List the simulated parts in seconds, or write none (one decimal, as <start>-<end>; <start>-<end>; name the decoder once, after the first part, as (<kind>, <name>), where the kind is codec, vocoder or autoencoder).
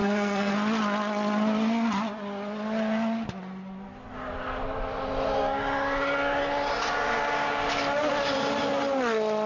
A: 0.0-0.5 (codec, SNAC)